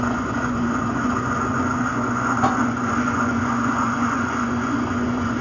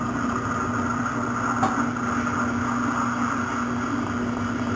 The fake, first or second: first